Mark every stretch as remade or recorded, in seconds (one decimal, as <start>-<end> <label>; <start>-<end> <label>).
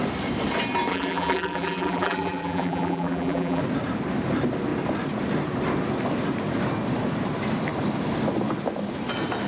0.0-0.9 recorded; 0.9-3.6 remade; 3.6-9.5 recorded